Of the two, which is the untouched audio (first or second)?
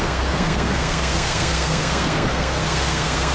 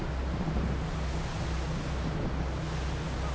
second